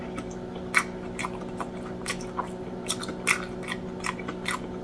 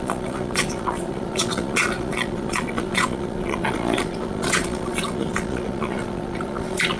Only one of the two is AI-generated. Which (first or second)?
second